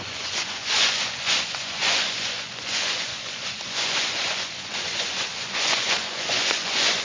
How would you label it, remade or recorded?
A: remade